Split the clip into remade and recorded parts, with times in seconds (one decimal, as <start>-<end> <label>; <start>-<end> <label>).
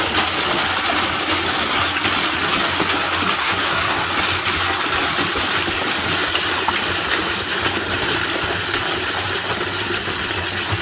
0.0-3.4 recorded; 3.4-4.0 remade; 4.0-10.8 recorded